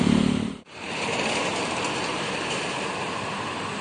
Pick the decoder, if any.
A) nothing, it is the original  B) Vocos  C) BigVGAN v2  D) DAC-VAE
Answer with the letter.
C